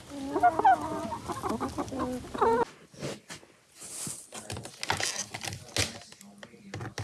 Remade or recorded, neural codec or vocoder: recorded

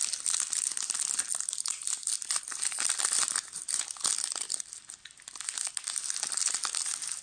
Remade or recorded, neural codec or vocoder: recorded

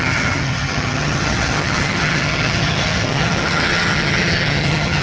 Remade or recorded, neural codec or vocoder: remade, vocoder, HiFi-GAN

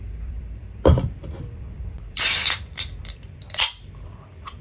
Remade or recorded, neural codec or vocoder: remade, vocoder, BigVGAN v2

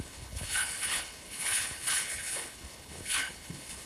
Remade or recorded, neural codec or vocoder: remade, codec, HILCodec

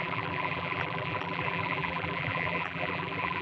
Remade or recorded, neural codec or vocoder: remade, vocoder, BigVGAN v2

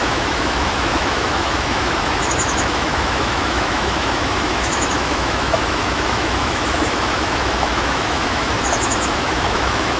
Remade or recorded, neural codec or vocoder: remade, autoencoder, DAC-VAE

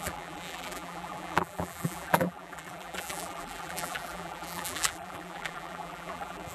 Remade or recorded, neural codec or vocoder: remade, vocoder, BigVGAN v2